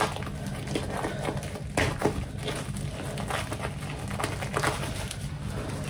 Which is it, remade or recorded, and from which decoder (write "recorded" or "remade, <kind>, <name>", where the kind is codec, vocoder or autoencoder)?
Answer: recorded